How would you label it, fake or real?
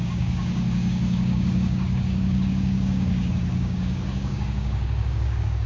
fake